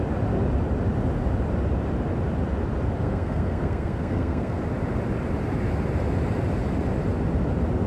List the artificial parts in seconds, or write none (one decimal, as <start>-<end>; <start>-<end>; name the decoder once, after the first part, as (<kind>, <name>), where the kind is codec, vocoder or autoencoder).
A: 3.0-4.6 (codec, SNAC)

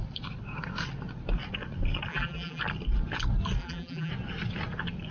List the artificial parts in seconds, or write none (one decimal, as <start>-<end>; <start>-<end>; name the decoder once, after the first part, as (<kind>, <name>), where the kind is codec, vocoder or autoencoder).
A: 2.1-2.6 (vocoder, BigVGAN v2); 3.6-4.1

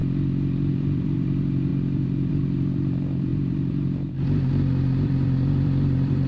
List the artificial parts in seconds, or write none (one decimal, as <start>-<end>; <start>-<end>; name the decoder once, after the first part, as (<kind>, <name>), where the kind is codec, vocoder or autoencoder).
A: 0.7-6.3 (vocoder, BigVGAN v2)

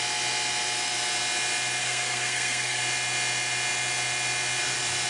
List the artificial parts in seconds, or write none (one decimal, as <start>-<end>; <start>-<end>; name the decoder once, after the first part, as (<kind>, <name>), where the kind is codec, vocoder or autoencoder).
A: 1.8-2.8 (codec, SNAC)

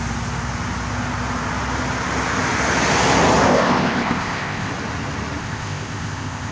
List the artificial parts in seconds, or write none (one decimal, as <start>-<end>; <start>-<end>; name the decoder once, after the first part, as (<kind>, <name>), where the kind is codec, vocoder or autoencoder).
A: 3.5-4.7 (codec, ZipCodec); 5.4-6.5

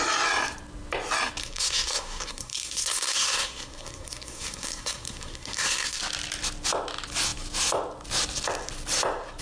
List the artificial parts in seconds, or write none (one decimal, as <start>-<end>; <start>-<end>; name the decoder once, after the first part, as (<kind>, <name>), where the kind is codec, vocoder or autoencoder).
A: 1.4-6.0 (codec, SNAC)

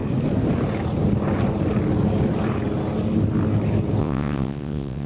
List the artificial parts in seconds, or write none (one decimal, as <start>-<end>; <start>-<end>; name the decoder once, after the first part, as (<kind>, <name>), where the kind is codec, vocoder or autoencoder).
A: 4.0-5.1 (vocoder, WaveNeXt)